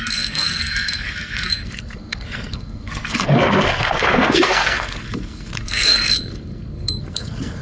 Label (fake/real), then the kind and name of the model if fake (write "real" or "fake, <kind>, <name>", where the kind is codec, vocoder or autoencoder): fake, codec, SNAC